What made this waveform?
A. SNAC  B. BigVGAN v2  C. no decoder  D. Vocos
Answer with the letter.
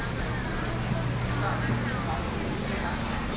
C